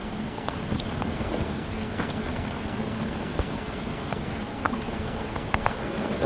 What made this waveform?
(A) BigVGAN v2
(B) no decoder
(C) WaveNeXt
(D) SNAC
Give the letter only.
D